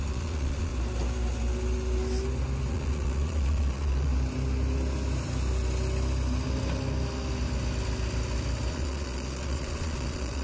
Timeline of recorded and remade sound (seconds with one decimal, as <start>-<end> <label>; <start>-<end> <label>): 0.0-0.7 remade; 0.7-2.7 recorded; 2.7-4.1 remade; 4.1-8.7 recorded; 8.7-10.4 remade